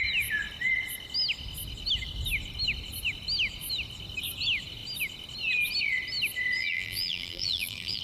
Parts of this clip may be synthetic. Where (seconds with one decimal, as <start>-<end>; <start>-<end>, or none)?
6.6-8.0